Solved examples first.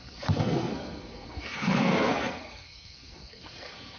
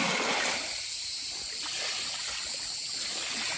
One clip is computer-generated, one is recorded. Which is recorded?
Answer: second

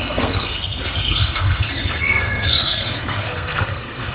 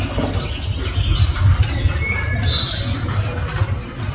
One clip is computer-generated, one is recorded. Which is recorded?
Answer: second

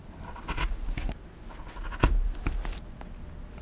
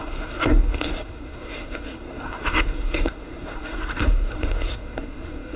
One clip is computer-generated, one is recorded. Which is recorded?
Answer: first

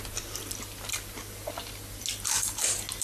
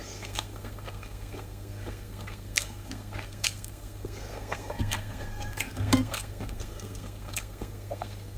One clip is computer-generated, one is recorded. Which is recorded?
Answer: first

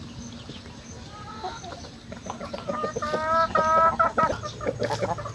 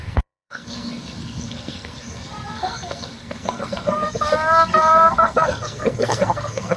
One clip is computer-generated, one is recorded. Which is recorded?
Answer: first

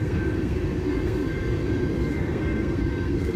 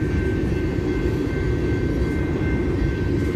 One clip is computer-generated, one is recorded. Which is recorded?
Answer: second